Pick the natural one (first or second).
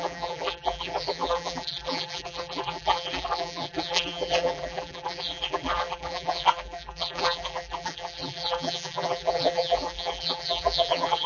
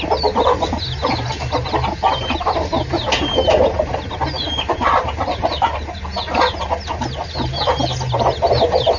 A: second